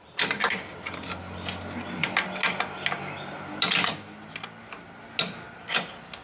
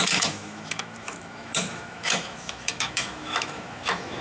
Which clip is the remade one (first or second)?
second